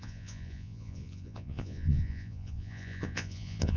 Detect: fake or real fake